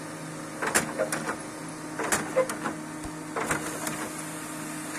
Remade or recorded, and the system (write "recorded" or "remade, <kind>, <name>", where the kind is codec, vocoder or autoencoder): recorded